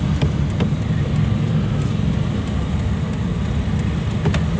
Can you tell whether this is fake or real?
real